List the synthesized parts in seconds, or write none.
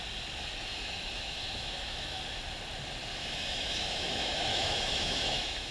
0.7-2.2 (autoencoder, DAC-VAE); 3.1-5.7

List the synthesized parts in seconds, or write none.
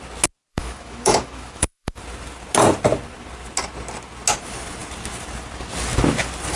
0.5-2.0 (autoencoder, DAC-VAE)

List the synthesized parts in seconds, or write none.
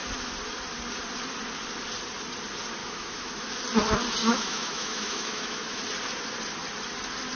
2.8-3.5 (autoencoder, DAC-VAE); 4.2-5.8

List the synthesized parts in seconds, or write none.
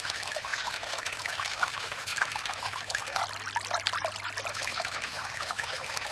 0.0-3.2 (autoencoder, DAC-VAE); 4.5-6.1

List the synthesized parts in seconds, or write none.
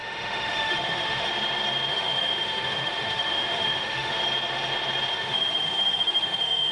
0.0-1.3 (autoencoder, DAC-VAE); 1.9-4.1; 5.1-6.7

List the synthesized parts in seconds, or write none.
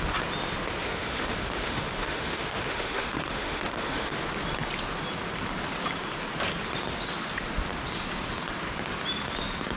0.8-4.2 (autoencoder, DAC-VAE)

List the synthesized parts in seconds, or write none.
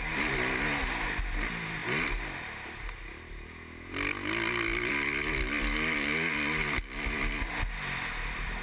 none